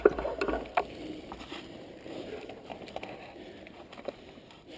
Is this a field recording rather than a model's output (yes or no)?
yes